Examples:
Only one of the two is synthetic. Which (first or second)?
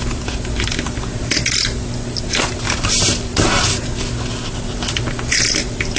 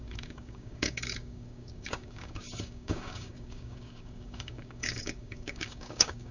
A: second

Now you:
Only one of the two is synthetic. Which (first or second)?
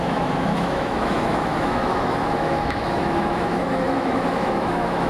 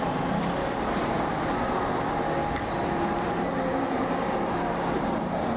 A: first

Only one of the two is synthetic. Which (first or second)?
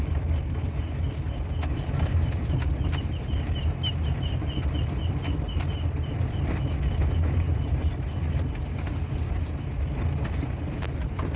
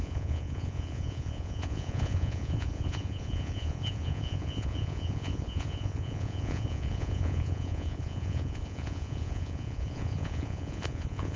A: second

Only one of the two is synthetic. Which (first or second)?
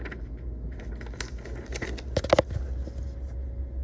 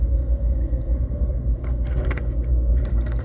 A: second